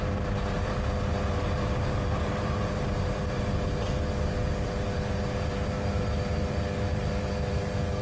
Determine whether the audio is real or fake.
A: fake